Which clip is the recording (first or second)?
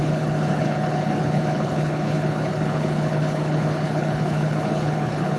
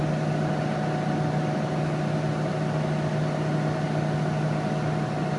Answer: second